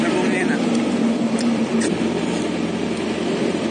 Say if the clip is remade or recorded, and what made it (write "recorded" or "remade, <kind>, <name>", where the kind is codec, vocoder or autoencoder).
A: recorded